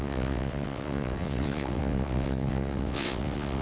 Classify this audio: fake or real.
fake